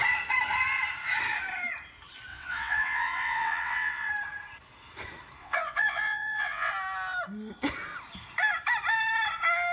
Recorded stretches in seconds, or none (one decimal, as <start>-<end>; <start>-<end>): 0.0-2.3; 4.1-5.4; 6.7-9.7